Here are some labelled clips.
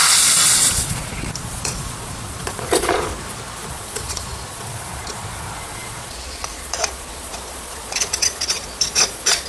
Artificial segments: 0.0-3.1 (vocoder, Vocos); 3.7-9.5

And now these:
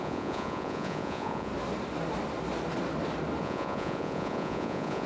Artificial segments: 0.0-1.5 (vocoder, Vocos); 3.4-5.1

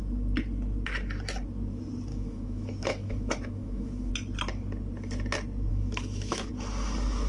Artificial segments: 2.1-4.1 (autoencoder, DAC-VAE); 5.7-6.5

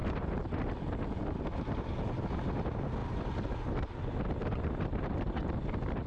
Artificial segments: 3.0-5.1 (vocoder, BigVGAN v2)

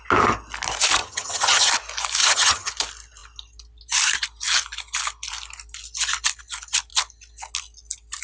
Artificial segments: 1.0-1.7 (vocoder, HiFi-GAN); 2.2-2.7